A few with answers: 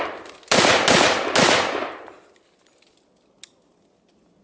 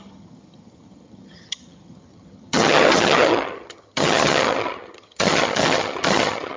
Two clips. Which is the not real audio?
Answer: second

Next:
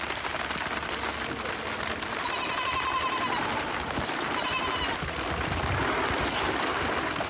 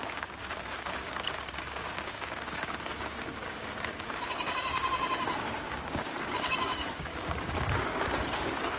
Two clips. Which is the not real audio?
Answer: second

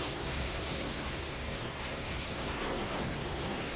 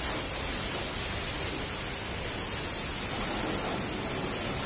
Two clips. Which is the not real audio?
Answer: first